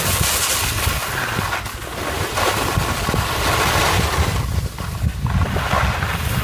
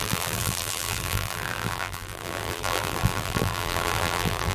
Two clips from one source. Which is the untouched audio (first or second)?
first